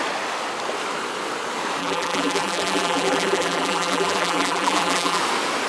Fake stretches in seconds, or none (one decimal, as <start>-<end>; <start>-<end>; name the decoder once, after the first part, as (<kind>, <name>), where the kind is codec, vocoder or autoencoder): 1.8-5.2 (vocoder, BigVGAN v2)